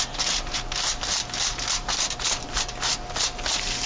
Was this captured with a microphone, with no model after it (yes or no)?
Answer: yes